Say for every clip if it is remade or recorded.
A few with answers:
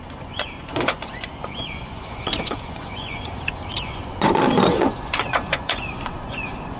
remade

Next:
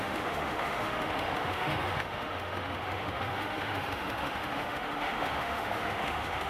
remade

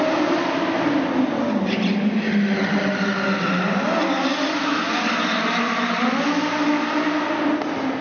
recorded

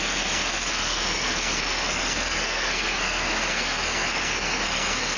remade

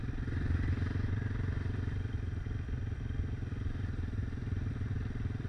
remade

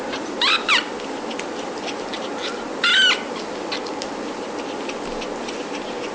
recorded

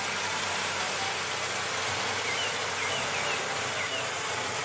recorded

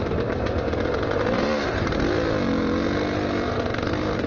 recorded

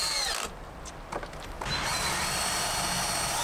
recorded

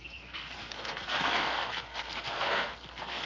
remade